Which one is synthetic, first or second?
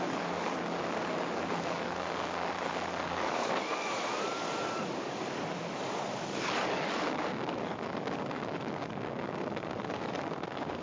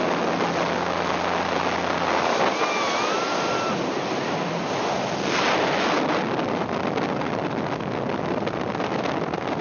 first